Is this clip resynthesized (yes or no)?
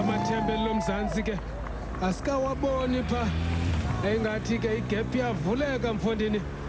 no